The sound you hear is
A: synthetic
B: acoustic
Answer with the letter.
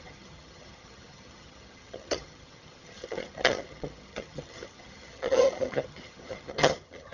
A